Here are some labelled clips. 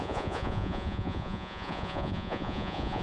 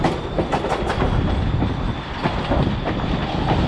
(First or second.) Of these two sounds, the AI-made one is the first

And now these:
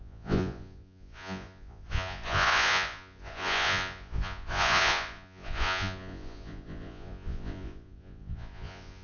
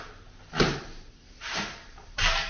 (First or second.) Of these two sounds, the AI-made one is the first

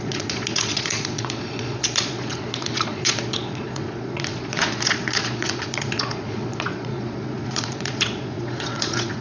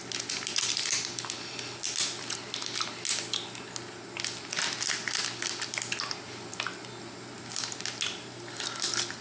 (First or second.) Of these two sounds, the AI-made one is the first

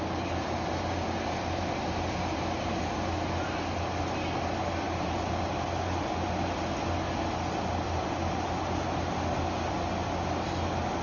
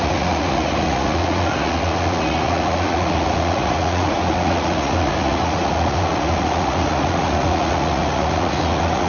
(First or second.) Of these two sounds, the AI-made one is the second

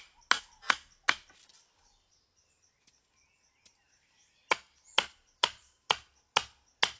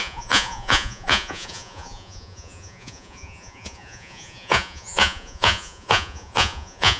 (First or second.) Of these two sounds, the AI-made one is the second